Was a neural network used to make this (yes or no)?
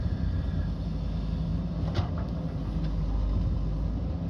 no